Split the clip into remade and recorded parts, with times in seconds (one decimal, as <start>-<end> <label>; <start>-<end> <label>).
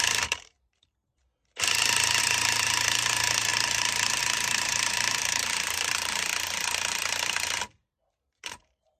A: 0.0-1.0 remade; 1.0-2.2 recorded; 2.2-3.5 remade; 3.5-4.2 recorded; 4.2-6.3 remade; 6.3-8.1 recorded; 8.1-9.0 remade